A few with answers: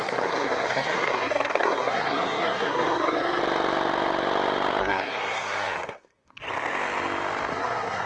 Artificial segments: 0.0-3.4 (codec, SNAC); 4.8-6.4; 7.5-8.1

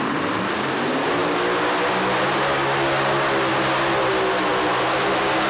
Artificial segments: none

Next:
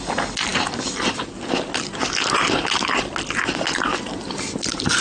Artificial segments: none

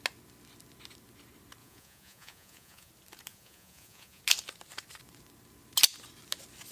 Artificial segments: 1.6-2.9 (vocoder, Vocos); 3.3-4.2

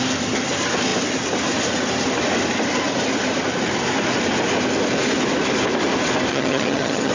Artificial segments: 6.3-7.1 (vocoder, HiFi-GAN)

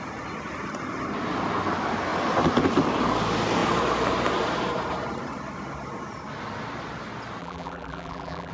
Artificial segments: 7.4-8.5 (vocoder, BigVGAN v2)